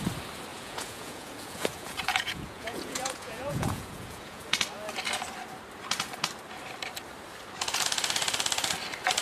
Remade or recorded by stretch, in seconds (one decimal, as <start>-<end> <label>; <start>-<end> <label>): 0.0-0.5 recorded; 0.5-4.4 remade; 4.4-9.2 recorded